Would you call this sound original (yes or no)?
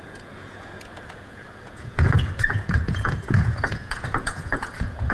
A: no